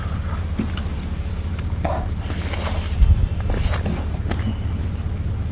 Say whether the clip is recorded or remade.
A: recorded